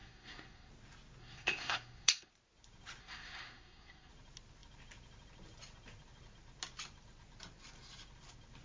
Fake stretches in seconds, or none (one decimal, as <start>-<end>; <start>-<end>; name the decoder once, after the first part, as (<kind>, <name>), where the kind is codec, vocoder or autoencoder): 0.0-0.7 (codec, SNAC); 1.2-2.3; 3.0-4.1